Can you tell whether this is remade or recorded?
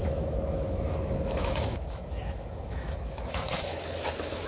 remade